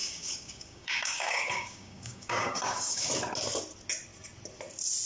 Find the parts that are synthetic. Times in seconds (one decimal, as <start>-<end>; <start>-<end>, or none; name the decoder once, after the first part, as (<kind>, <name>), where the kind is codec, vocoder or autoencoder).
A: 0.0-3.1 (codec, DAC)